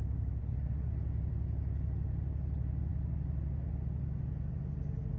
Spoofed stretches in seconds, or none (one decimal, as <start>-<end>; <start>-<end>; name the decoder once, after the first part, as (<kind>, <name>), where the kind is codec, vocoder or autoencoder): 0.4-0.9 (codec, SNAC)